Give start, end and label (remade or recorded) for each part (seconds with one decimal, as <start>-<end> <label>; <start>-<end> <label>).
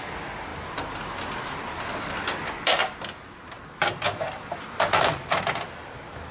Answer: 0.0-6.3 recorded